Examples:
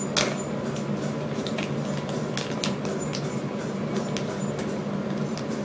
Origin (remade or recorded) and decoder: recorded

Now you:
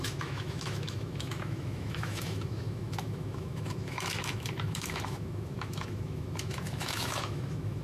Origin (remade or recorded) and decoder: remade, autoencoder, DAC-VAE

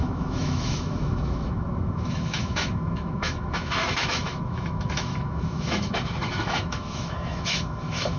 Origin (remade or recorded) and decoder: remade, autoencoder, DAC-VAE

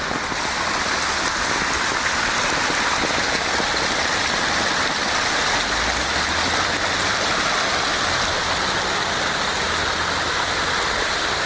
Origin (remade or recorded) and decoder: recorded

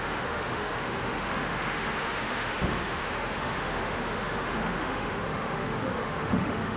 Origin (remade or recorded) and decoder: remade, autoencoder, DAC-VAE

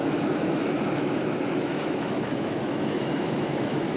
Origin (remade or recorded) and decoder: remade, autoencoder, DAC-VAE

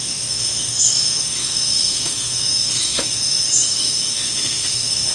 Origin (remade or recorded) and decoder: remade, autoencoder, DAC-VAE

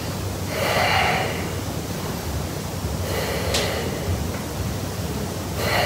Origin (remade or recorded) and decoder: recorded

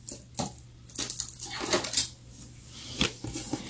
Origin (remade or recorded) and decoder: recorded